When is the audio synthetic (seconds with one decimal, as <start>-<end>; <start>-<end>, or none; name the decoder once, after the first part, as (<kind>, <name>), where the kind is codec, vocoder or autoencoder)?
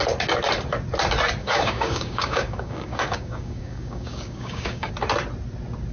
1.4-4.9 (codec, DAC)